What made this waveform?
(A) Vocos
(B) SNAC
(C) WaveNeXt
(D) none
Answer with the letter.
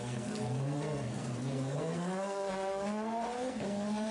B